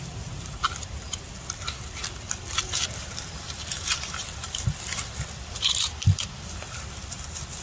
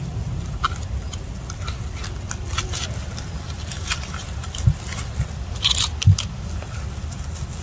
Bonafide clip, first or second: second